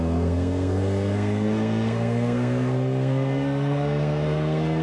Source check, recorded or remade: remade